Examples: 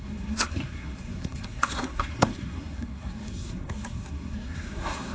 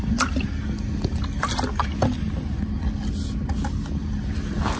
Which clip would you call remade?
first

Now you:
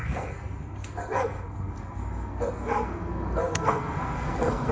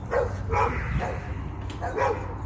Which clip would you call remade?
first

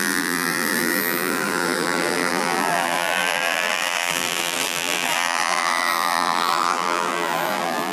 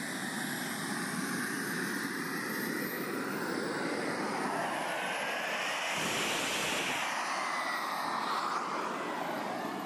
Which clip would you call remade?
first